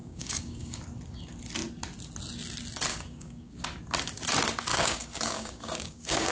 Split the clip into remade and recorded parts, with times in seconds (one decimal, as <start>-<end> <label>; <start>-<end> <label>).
0.0-0.8 remade; 0.8-2.9 recorded; 2.9-3.6 remade; 3.6-4.7 recorded; 4.7-6.3 remade